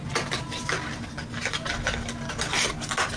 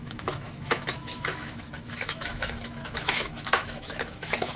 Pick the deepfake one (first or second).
second